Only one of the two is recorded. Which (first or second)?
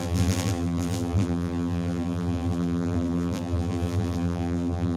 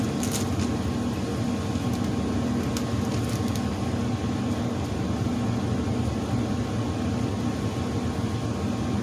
second